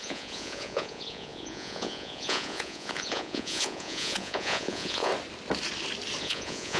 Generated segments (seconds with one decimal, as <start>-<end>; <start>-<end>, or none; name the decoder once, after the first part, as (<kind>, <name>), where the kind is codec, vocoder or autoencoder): 0.0-5.1 (vocoder, Vocos); 6.2-6.8